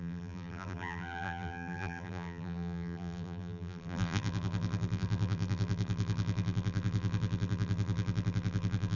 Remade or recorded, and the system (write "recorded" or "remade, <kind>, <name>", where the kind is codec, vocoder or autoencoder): remade, vocoder, BigVGAN v2